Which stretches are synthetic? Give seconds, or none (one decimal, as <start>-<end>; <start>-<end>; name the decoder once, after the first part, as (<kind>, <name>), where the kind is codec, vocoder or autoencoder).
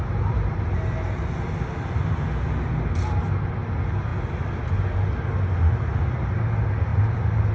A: none